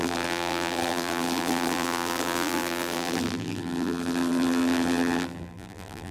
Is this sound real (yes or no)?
no